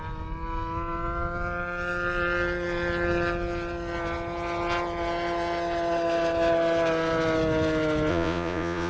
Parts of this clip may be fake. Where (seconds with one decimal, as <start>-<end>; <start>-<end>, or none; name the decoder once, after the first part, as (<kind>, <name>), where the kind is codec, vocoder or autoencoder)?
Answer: 8.1-8.9 (vocoder, Vocos)